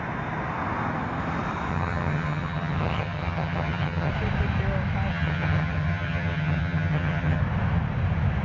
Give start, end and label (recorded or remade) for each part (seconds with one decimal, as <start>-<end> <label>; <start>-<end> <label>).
0.0-1.7 recorded; 1.7-4.1 remade; 4.1-5.1 recorded; 5.1-7.4 remade; 7.4-8.4 recorded